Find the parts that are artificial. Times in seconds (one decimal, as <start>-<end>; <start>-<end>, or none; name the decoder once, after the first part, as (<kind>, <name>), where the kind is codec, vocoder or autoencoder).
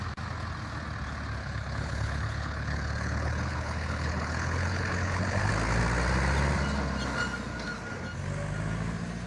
1.4-5.5 (codec, HILCodec)